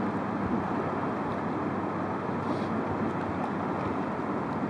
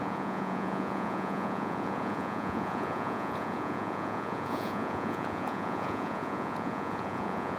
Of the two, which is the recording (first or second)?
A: first